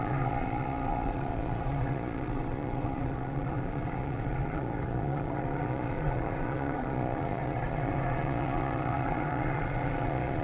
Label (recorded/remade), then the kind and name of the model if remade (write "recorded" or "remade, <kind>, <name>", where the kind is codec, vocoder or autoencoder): remade, vocoder, Vocos